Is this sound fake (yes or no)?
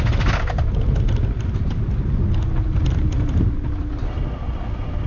no